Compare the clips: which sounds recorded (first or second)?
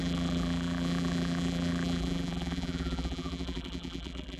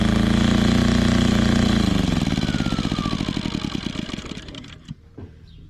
second